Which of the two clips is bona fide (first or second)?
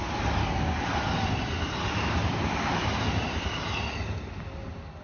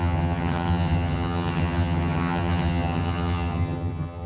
first